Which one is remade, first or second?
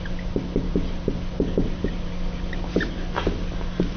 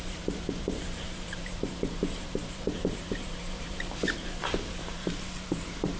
second